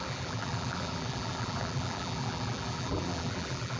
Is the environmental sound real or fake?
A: fake